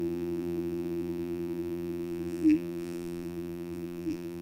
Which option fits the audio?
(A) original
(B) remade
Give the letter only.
B